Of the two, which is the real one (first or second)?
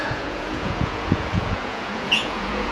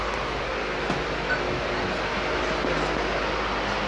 second